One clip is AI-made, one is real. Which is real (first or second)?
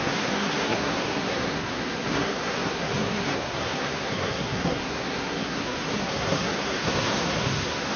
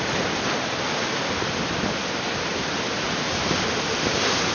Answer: second